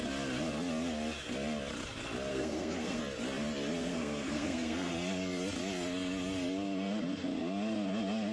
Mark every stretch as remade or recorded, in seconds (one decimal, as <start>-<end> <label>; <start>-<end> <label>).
0.0-2.3 recorded; 2.3-3.0 remade; 3.0-3.8 recorded; 3.8-4.9 remade; 4.9-8.3 recorded